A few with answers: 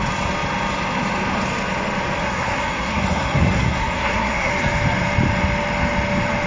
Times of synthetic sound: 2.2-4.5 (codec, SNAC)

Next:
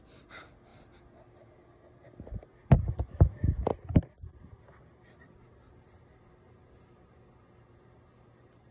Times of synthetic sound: none

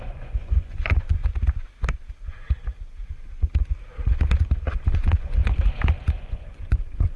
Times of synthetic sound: 0.0-1.2 (vocoder, Vocos); 4.7-5.4; 6.1-7.2

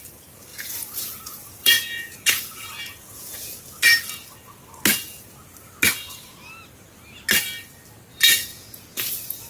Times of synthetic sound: 0.5-3.6 (vocoder, Vocos); 8.1-9.1

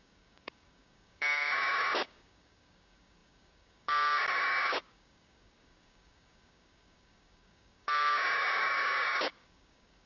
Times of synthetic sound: 0.0-10.1 (codec, DAC)

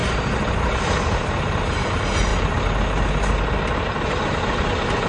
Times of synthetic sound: none

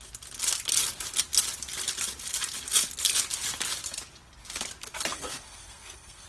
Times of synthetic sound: 5.1-6.3 (codec, SNAC)